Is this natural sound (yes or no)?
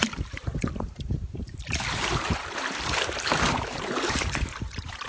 no